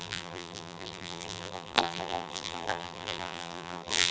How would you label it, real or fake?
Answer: fake